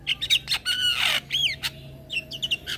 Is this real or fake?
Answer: real